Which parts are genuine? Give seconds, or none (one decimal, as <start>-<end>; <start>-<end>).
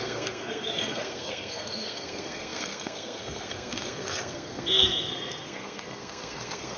none